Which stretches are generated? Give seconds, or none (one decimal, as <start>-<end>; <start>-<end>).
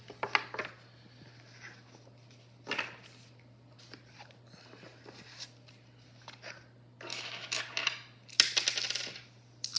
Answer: 7.1-7.6